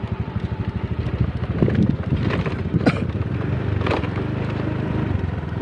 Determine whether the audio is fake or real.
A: real